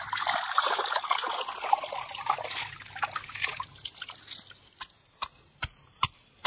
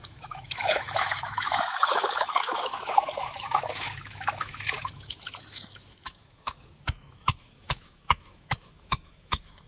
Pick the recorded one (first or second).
first